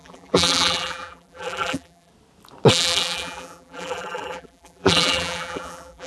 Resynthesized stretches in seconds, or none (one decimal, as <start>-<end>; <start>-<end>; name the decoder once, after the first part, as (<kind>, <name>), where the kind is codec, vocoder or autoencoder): 0.0-2.1 (vocoder, BigVGAN v2); 2.7-6.1